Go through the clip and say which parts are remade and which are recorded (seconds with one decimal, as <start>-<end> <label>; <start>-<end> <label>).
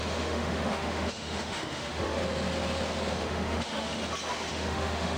0.0-2.2 remade; 2.2-3.1 recorded; 3.1-4.0 remade; 4.0-4.5 recorded; 4.5-5.2 remade